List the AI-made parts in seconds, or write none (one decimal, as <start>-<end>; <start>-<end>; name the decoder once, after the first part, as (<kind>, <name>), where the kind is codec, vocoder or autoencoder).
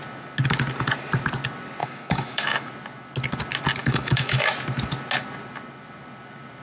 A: 1.8-2.7 (autoencoder, DAC-VAE); 3.8-4.5